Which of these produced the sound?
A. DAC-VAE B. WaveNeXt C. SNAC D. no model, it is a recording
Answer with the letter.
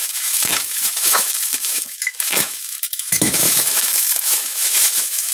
A